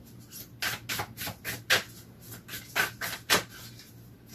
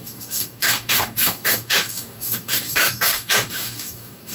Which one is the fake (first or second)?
second